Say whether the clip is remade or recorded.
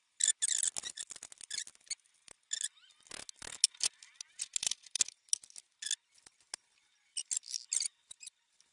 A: recorded